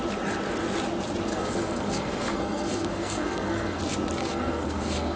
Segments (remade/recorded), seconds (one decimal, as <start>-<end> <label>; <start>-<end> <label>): 0.0-1.3 recorded; 1.3-3.8 remade; 3.8-4.2 recorded; 4.2-5.2 remade